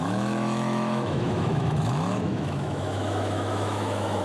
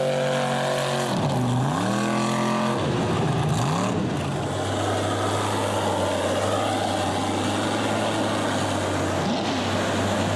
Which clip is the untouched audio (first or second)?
second